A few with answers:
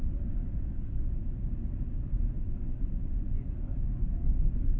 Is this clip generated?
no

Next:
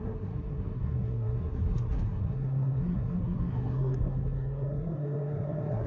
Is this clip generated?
yes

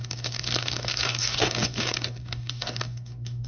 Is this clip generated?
yes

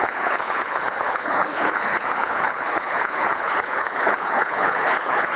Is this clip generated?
yes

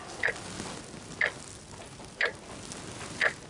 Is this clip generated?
no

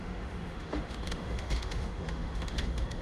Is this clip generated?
yes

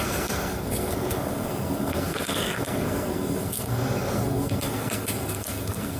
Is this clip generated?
yes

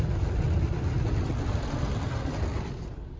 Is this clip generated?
no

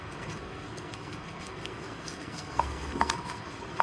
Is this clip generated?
yes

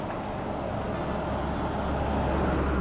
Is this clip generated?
no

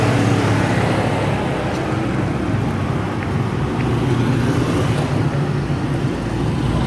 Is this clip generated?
no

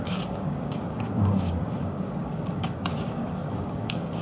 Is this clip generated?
yes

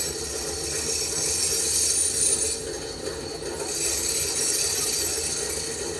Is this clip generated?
no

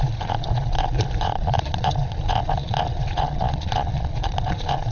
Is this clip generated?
yes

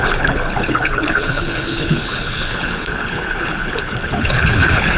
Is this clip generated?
yes